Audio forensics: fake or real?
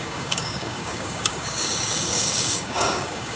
fake